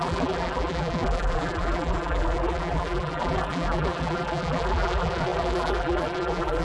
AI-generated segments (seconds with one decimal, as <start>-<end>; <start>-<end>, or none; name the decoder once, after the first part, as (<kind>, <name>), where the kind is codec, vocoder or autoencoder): 0.0-6.6 (vocoder, BigVGAN v2)